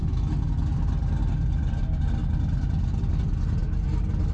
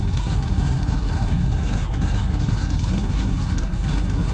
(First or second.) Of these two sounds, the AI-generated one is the second